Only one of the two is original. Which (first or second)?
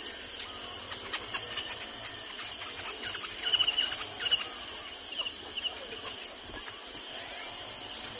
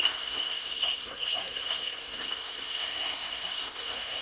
first